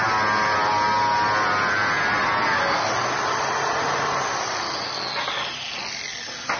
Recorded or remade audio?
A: recorded